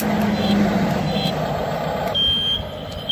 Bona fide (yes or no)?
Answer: yes